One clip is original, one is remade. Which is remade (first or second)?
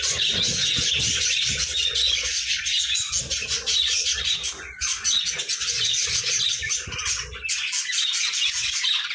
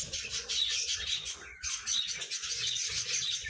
second